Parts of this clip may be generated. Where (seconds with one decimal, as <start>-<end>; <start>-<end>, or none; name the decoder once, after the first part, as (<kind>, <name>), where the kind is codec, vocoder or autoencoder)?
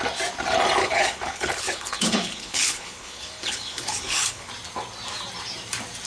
0.8-4.5 (codec, HILCodec)